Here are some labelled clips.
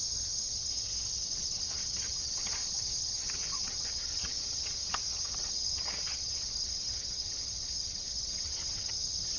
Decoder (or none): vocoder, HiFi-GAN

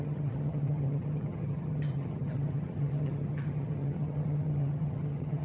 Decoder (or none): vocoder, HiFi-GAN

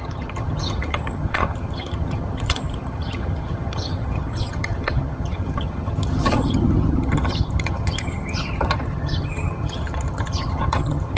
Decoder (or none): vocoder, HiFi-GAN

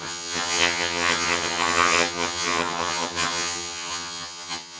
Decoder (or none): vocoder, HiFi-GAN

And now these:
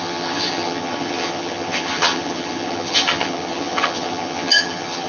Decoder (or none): vocoder, HiFi-GAN